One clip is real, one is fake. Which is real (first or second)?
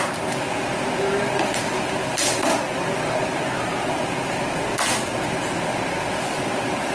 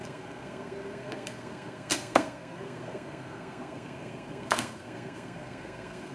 first